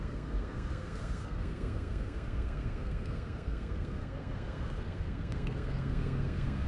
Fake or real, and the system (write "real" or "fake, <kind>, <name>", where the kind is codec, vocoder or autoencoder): fake, codec, SNAC